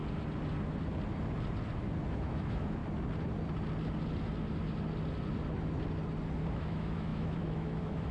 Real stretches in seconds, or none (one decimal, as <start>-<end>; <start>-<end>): 0.0-2.1; 2.8-6.5